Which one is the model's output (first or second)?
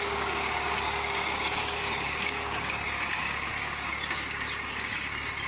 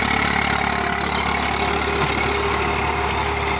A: first